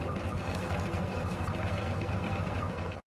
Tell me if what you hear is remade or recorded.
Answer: remade